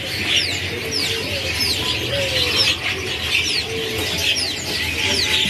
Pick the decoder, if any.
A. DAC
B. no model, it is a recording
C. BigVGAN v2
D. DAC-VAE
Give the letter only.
B